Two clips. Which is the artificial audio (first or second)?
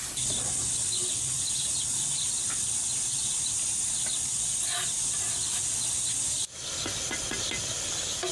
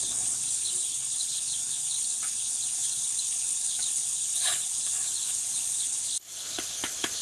second